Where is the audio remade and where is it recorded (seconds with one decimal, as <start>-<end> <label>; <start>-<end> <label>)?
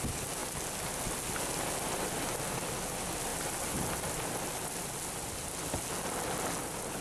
0.0-7.0 recorded